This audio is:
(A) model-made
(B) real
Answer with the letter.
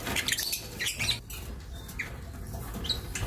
B